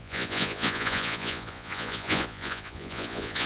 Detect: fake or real fake